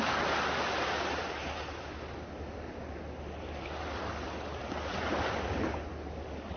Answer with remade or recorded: recorded